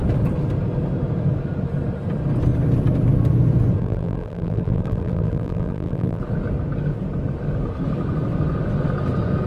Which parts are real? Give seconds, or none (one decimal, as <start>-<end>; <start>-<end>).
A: 0.0-3.8; 6.2-9.5